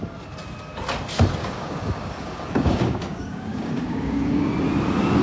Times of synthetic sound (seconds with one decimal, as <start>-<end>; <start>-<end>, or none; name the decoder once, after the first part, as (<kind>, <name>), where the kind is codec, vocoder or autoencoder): 1.4-4.5 (codec, DAC)